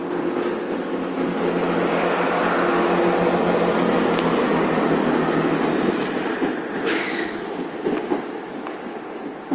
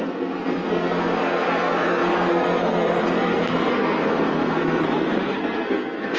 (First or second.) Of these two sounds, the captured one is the first